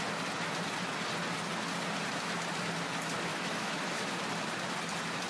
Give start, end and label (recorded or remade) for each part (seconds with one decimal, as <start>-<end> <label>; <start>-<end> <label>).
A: 0.0-3.3 recorded; 3.3-4.0 remade; 4.0-5.3 recorded